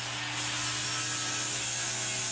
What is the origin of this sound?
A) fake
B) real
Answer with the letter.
B